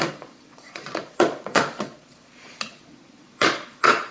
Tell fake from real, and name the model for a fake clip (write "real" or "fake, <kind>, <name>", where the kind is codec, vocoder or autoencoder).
fake, vocoder, Vocos